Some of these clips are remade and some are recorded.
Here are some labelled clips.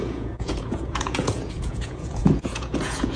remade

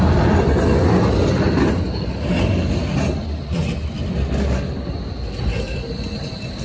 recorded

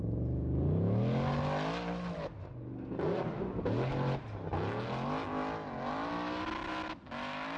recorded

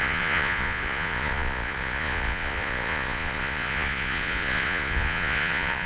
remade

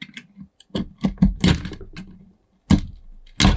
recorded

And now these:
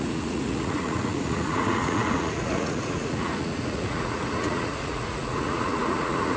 remade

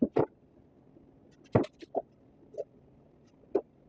recorded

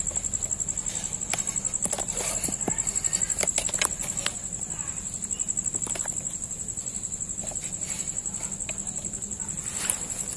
recorded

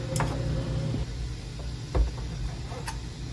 recorded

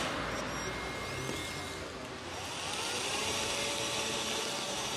recorded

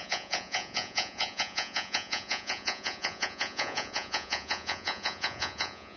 remade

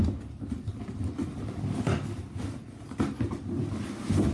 recorded